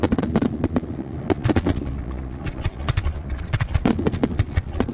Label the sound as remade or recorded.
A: remade